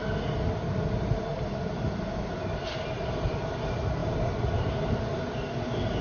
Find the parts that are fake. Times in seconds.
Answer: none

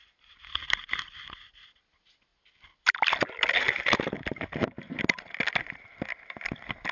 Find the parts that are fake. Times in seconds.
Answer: none

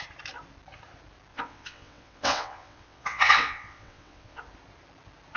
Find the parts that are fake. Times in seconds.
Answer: 1.3-4.4 (vocoder, WaveNeXt)

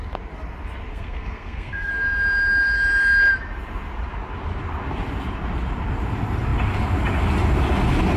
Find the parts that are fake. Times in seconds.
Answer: 0.9-1.9 (codec, SNAC)

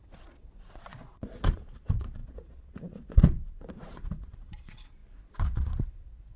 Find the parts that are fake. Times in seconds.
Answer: 0.0-6.4 (vocoder, Vocos)

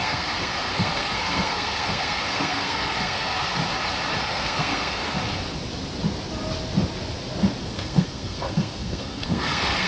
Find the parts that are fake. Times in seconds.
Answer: 0.0-3.6 (codec, SNAC); 4.2-5.2; 7.6-9.9